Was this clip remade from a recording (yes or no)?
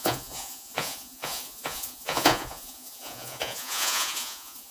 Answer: yes